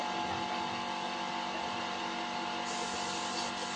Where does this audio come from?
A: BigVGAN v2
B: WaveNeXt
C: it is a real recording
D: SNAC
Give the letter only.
C